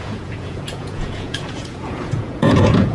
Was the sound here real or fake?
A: fake